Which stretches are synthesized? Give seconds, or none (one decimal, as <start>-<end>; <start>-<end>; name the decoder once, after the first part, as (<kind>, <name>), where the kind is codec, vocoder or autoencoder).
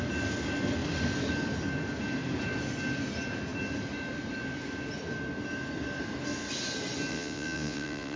7.1-8.2 (vocoder, WaveNeXt)